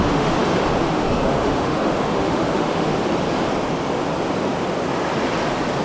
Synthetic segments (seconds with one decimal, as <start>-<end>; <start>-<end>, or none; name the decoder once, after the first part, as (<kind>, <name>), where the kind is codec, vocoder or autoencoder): 0.0-0.4 (autoencoder, DAC-VAE); 0.9-3.0

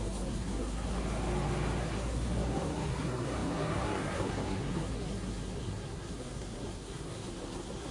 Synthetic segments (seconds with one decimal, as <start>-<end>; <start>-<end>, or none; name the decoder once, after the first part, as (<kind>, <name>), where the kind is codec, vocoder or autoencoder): 0.0-1.0 (codec, SNAC); 1.8-7.9